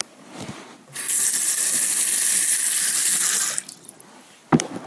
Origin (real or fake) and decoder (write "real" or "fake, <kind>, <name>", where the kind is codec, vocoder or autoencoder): real